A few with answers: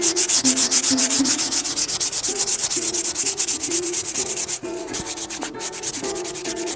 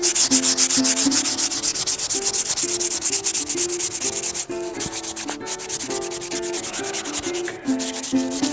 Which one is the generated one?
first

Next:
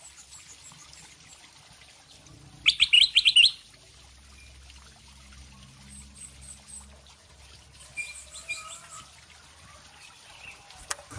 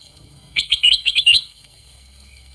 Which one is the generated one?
second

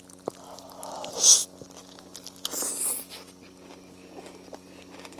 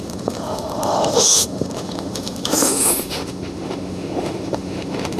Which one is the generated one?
second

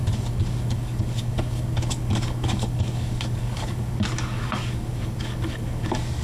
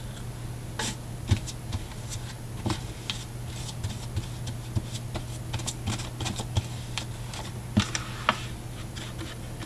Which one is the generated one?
first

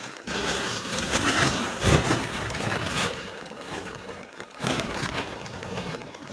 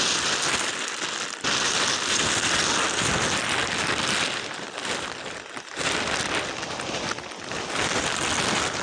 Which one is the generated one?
first